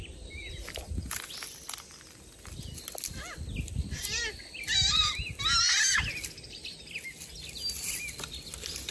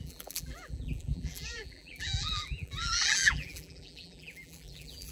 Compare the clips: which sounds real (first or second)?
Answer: first